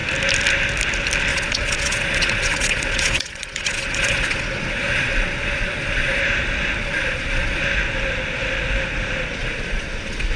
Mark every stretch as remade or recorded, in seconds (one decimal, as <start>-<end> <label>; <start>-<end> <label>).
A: 0.0-1.3 recorded; 1.3-6.2 remade; 6.2-6.8 recorded; 6.8-7.6 remade; 7.6-9.4 recorded; 9.4-10.4 remade